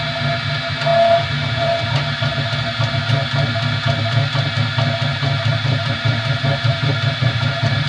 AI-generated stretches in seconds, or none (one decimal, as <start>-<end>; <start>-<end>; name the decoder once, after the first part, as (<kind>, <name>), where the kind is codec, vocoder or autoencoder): 5.1-7.9 (vocoder, BigVGAN v2)